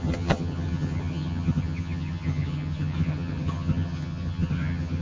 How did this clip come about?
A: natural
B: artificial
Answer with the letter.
B